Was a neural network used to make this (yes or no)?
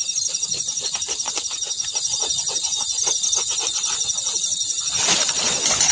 no